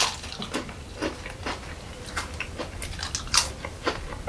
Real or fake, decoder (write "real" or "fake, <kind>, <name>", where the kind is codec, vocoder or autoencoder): real